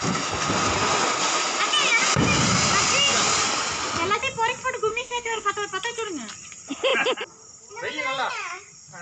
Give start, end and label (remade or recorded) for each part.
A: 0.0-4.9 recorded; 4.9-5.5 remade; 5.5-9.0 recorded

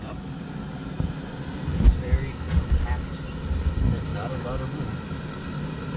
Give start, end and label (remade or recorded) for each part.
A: 0.0-6.0 recorded

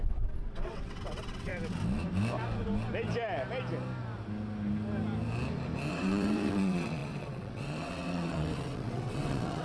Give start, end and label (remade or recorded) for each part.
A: 0.0-1.5 remade; 1.5-5.9 recorded; 5.9-9.6 remade